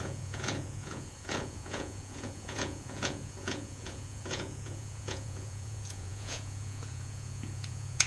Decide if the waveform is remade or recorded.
remade